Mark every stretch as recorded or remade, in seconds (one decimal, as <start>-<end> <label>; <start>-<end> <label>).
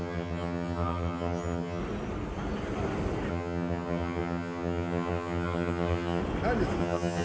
0.0-1.8 remade; 1.8-3.3 recorded; 3.3-6.2 remade; 6.2-6.8 recorded; 6.8-7.2 remade